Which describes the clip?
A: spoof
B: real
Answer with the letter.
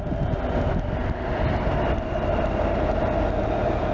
B